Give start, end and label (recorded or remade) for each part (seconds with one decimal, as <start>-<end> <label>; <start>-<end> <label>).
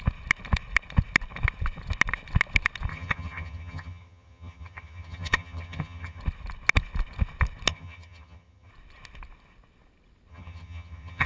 0.0-2.9 recorded; 2.9-6.2 remade; 6.2-7.7 recorded; 7.7-8.7 remade; 8.7-10.3 recorded; 10.3-11.3 remade